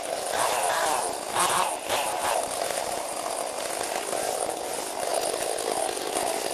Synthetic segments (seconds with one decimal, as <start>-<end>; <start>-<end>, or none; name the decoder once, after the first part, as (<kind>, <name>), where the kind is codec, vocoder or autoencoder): 2.2-3.1 (vocoder, BigVGAN v2)